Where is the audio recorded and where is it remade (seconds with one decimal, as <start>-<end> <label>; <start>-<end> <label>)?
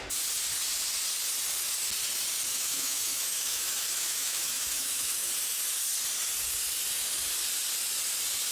0.0-2.5 recorded; 2.5-5.3 remade; 5.3-8.5 recorded